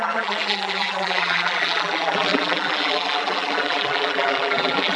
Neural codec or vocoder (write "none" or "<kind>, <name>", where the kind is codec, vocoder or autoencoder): vocoder, BigVGAN v2